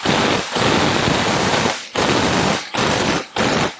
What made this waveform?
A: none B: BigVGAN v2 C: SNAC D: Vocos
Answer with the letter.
A